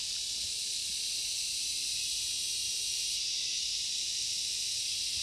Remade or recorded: recorded